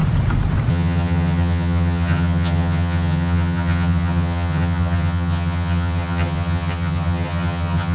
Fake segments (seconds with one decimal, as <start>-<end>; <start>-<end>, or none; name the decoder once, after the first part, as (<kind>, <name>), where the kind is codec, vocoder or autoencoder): 0.7-7.9 (vocoder, HiFi-GAN)